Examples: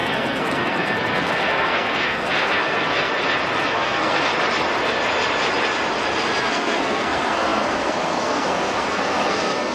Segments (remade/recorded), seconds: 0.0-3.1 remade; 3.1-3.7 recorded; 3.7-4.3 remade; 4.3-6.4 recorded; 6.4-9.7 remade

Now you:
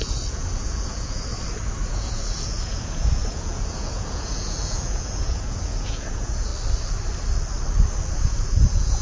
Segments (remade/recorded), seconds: 0.0-1.3 remade; 1.3-1.9 recorded; 1.9-6.5 remade; 6.5-8.1 recorded; 8.1-9.0 remade

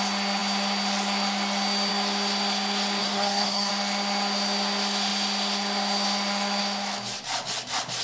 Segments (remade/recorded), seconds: 0.0-3.0 recorded; 3.0-3.7 remade; 3.7-8.0 recorded